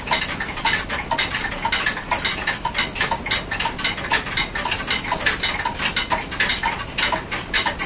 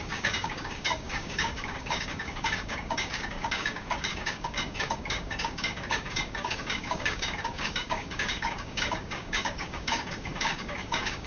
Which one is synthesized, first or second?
second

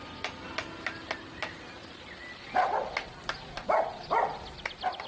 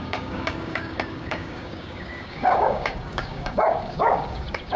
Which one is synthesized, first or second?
second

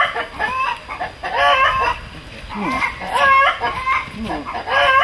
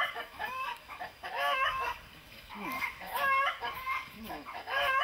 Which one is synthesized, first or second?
second